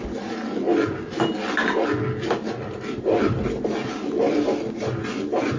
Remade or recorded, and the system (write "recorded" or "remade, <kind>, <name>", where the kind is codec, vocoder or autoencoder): recorded